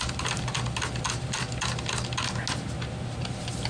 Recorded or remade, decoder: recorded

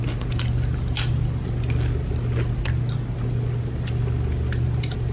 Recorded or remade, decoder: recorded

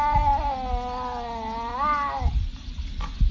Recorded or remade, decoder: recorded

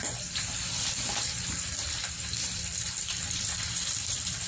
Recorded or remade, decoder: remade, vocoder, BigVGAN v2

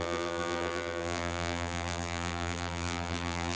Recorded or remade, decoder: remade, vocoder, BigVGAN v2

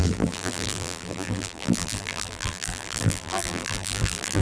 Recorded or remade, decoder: remade, vocoder, BigVGAN v2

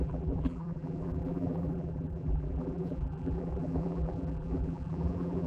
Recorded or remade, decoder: remade, vocoder, BigVGAN v2